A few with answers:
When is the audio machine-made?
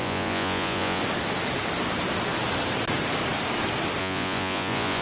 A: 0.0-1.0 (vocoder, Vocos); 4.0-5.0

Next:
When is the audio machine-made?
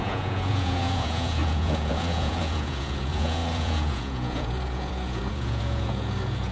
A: 0.0-6.5 (vocoder, Vocos)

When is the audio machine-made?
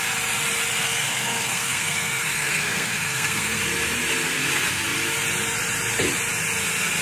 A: 0.8-3.6 (codec, SNAC)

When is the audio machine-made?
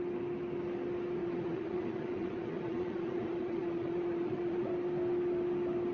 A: 1.2-4.7 (vocoder, Vocos)